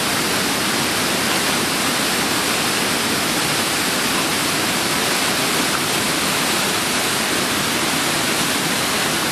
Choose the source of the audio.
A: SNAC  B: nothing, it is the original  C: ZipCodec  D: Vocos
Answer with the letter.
B